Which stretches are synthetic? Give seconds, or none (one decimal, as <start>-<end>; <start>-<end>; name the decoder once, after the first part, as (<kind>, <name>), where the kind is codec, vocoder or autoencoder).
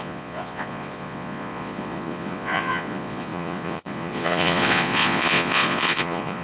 0.0-6.4 (vocoder, Vocos)